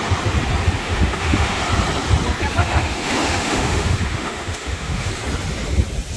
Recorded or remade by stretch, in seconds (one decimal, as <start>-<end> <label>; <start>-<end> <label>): 0.0-0.8 recorded; 0.8-1.6 remade; 1.6-2.6 recorded; 2.6-5.1 remade; 5.1-6.2 recorded